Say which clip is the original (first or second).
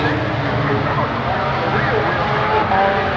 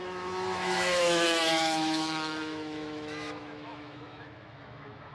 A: first